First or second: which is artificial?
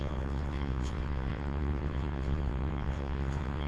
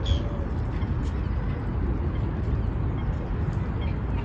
first